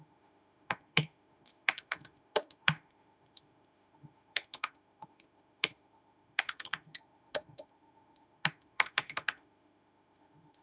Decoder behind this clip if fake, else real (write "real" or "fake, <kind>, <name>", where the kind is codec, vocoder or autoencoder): fake, autoencoder, DAC-VAE